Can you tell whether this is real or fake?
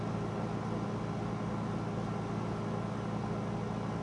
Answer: real